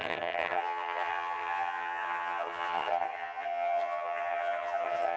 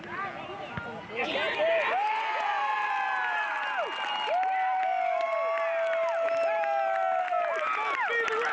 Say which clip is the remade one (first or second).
first